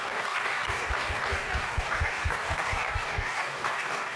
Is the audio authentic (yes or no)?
no